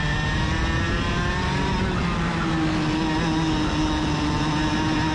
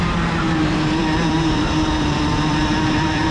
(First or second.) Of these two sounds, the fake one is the second